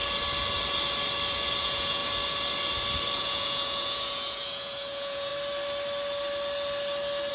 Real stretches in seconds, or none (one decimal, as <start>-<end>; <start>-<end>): 0.0-1.6; 2.0-3.2; 5.3-7.3